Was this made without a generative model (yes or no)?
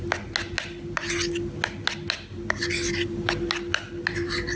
yes